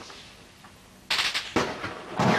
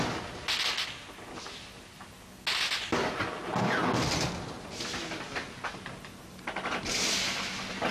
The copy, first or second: first